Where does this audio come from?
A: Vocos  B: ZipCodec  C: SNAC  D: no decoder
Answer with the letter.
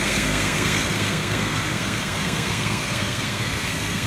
C